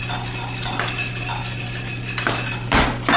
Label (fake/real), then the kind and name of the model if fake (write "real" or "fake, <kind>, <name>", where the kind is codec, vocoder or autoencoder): real